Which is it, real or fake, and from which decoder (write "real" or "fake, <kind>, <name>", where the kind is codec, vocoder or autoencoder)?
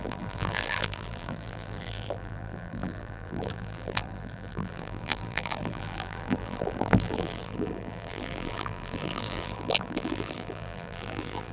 fake, vocoder, BigVGAN v2